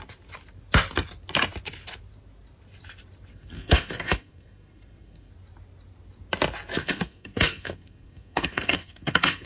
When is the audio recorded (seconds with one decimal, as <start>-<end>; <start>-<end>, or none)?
0.0-3.3; 5.3-6.8